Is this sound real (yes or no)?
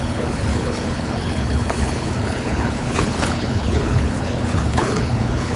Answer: no